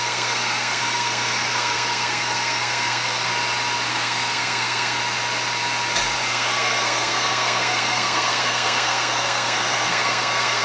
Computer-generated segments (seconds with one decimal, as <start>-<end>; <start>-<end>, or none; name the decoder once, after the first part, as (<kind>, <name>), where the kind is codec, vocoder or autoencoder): 0.0-3.3 (codec, SNAC); 3.9-5.0; 6.3-10.6